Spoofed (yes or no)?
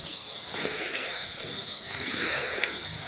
yes